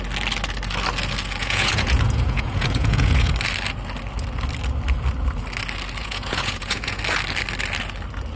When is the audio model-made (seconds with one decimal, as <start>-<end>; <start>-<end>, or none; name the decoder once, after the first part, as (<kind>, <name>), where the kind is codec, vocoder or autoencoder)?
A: 1.4-3.3 (vocoder, Vocos); 6.0-7.0